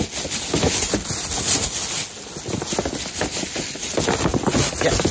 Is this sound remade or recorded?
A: recorded